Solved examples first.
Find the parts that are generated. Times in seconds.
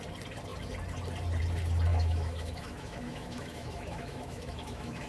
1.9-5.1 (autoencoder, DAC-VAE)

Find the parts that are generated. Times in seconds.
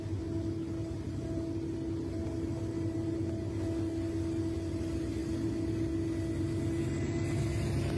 none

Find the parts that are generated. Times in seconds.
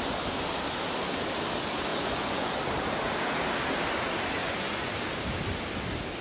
1.9-2.6 (vocoder, Vocos); 4.4-4.9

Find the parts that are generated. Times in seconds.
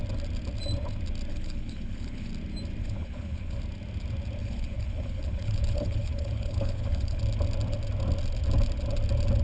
1.3-2.3 (codec, HILCodec); 2.8-3.6; 4.4-7.2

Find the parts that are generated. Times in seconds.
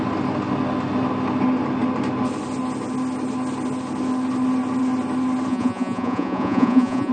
5.5-7.1 (vocoder, Vocos)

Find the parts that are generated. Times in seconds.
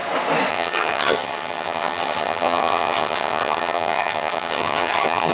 0.5-5.3 (vocoder, HiFi-GAN)